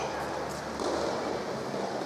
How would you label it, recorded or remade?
recorded